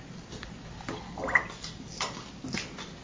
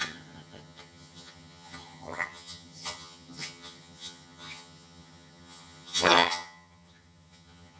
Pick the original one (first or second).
first